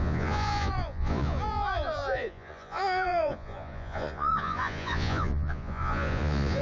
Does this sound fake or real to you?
fake